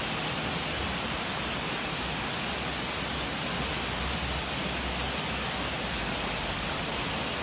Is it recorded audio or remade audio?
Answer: recorded